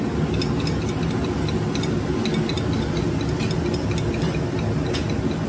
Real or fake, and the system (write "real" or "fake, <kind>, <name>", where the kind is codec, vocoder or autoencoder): real